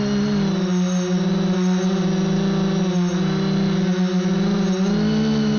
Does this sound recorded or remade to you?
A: recorded